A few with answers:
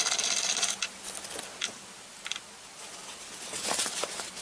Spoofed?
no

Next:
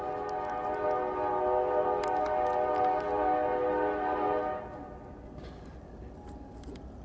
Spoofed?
no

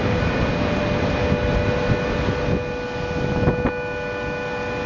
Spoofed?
no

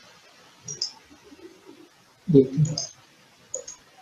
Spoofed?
no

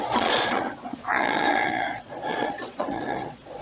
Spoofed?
yes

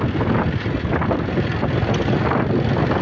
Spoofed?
no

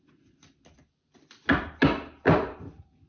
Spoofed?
no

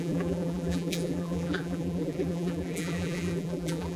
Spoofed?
yes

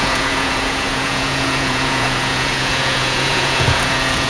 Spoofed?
yes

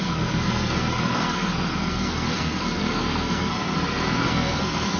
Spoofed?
yes